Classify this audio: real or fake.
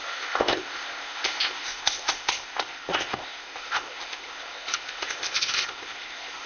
fake